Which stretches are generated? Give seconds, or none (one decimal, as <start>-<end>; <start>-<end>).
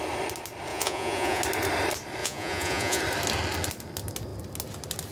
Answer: 0.7-1.4; 2.2-3.0